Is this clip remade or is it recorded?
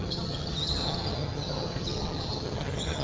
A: remade